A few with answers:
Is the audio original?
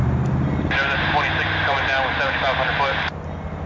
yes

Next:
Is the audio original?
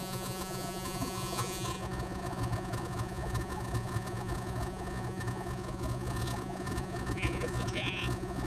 no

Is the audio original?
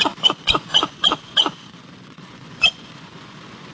no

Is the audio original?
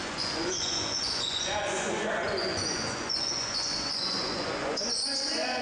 no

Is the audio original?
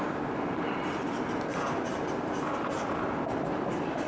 yes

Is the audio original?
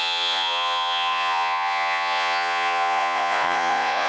no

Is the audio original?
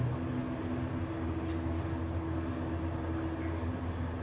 yes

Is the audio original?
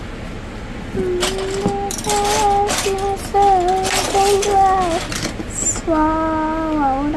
yes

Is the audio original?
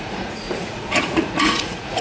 no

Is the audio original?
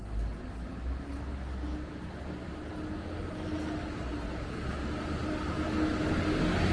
yes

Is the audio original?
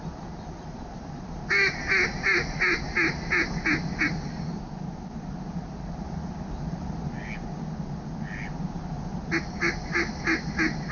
yes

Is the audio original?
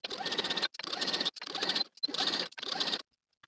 yes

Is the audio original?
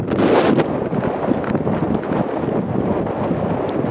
yes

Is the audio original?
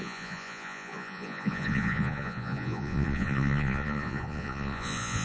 no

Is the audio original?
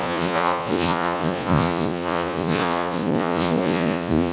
no